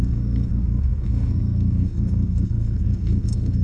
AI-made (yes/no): yes